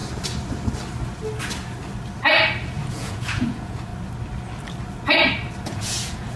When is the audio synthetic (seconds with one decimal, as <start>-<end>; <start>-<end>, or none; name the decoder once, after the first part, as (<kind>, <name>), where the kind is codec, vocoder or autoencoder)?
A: 2.9-3.9 (vocoder, Vocos); 5.6-6.4